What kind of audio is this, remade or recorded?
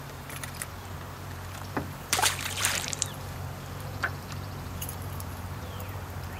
remade